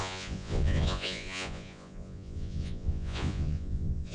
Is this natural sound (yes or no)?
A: no